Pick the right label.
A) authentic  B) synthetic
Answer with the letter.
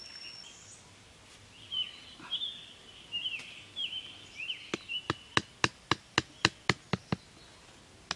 A